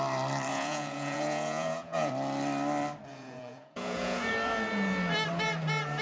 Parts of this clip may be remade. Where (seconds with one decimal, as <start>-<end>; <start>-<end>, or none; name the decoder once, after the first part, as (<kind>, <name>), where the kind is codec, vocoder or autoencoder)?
0.5-2.1 (vocoder, Vocos); 3.1-4.3